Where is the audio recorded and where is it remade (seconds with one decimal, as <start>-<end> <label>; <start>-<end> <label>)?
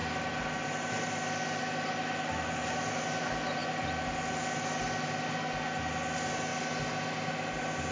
0.0-7.9 recorded